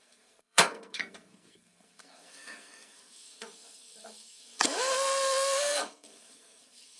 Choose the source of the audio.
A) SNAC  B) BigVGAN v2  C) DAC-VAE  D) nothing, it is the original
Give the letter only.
A